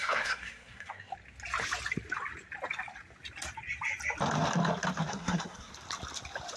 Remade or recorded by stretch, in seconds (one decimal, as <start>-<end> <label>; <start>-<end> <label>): 0.0-1.1 remade; 1.1-5.1 recorded; 5.1-5.7 remade; 5.7-6.6 recorded